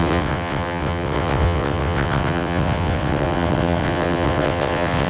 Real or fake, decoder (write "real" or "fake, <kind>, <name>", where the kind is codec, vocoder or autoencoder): fake, vocoder, WaveNeXt